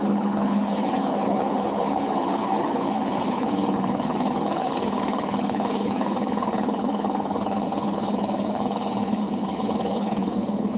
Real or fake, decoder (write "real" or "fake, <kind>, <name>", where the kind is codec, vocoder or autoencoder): fake, codec, HILCodec